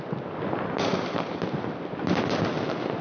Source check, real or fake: real